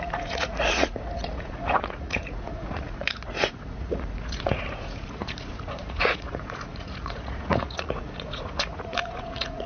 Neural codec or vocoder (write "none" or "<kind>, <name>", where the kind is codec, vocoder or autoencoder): vocoder, Vocos